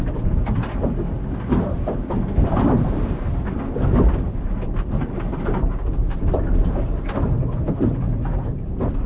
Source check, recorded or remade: remade